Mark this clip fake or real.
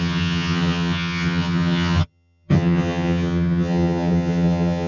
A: fake